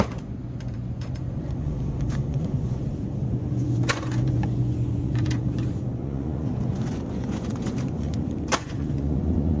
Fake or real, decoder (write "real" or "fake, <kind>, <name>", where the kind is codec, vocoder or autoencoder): fake, vocoder, Vocos